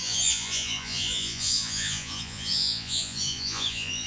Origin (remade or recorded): remade